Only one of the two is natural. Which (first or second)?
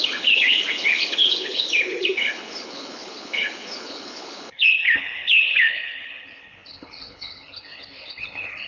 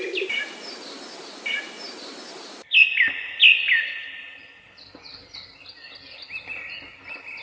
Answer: second